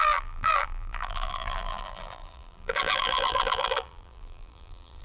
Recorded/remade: remade